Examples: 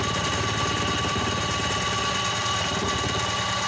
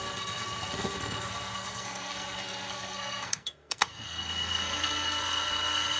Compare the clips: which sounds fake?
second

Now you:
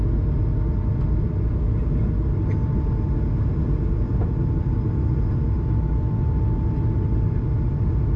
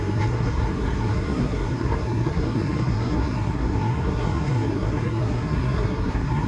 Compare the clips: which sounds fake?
second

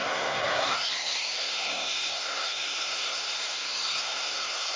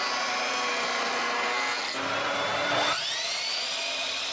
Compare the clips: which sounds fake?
first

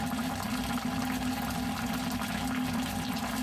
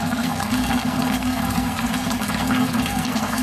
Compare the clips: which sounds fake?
second